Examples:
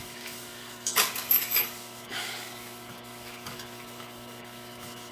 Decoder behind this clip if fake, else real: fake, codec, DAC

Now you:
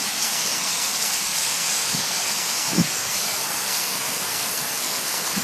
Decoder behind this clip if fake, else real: fake, codec, SNAC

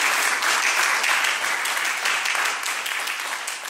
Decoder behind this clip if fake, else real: real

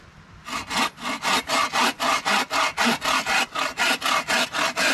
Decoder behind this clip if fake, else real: real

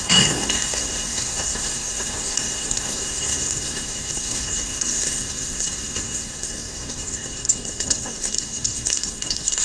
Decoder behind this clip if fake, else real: fake, codec, SNAC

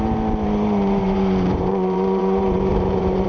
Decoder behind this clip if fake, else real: fake, vocoder, BigVGAN v2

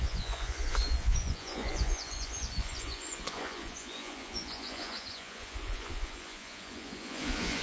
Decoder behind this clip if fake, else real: fake, vocoder, Vocos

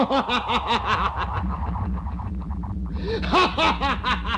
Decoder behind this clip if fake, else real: real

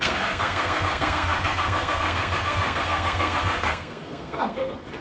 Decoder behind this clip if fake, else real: fake, codec, SNAC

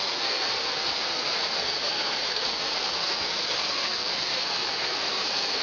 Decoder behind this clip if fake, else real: fake, codec, SNAC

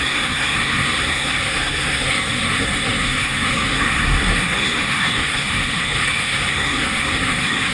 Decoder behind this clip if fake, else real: fake, codec, SNAC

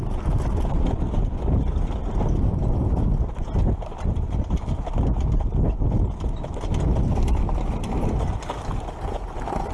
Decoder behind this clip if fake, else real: real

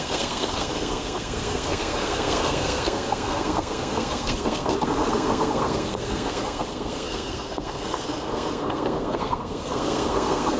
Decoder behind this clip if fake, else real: fake, codec, SNAC